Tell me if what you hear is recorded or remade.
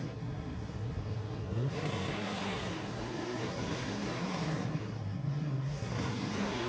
remade